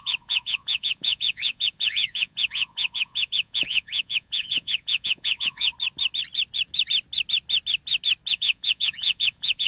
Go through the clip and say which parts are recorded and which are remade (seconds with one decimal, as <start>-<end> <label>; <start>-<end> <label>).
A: 0.0-5.7 remade; 5.7-8.3 recorded; 8.3-9.7 remade